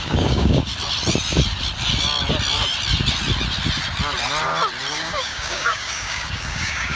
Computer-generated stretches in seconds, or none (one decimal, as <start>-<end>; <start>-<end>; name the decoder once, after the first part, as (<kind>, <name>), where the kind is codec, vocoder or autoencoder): 0.0-0.7 (codec, DAC); 4.9-7.0